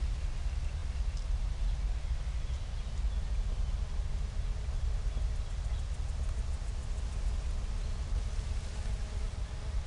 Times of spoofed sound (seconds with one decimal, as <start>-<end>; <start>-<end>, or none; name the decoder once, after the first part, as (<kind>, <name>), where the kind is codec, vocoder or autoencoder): none

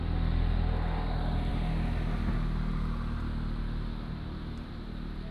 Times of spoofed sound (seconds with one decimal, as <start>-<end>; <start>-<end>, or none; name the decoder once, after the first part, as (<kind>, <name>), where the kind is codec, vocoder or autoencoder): none

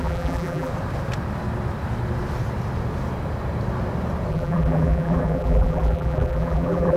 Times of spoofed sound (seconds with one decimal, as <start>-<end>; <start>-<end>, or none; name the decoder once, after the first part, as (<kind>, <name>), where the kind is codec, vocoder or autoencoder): 0.0-0.7 (vocoder, BigVGAN v2); 4.3-7.0

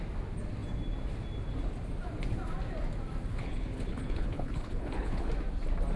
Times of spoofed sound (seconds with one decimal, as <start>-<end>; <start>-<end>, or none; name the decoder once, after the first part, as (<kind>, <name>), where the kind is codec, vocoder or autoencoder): 3.3-5.3 (codec, HILCodec)

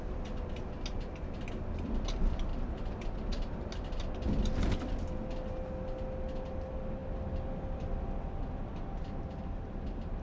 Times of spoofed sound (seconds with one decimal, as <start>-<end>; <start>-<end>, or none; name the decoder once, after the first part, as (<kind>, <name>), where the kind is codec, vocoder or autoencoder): 2.5-3.7 (vocoder, BigVGAN v2)

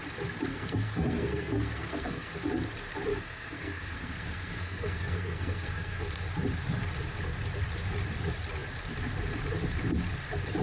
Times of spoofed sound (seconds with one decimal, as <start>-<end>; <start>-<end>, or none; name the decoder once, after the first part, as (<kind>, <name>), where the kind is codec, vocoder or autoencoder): 0.5-2.3 (codec, SNAC); 3.1-6.0